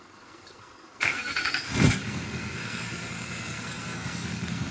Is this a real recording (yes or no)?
no